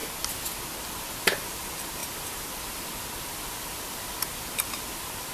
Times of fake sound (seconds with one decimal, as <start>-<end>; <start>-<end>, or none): none